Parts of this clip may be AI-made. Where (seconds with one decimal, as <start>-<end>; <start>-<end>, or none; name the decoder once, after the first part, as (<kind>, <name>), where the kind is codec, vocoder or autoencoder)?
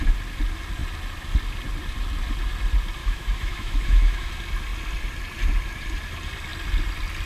3.0-4.3 (autoencoder, DAC-VAE)